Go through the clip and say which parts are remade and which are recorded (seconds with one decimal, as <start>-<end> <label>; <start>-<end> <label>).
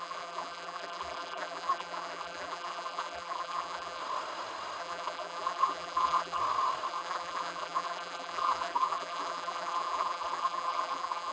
0.0-4.0 remade; 4.0-4.8 recorded; 4.8-6.4 remade; 6.4-6.9 recorded; 6.9-11.3 remade